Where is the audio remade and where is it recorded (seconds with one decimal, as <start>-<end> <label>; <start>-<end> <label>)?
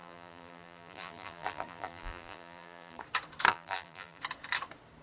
0.0-3.0 remade; 3.0-3.5 recorded; 3.5-4.2 remade; 4.2-5.0 recorded